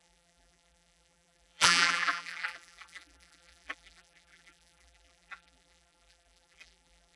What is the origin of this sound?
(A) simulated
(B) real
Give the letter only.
A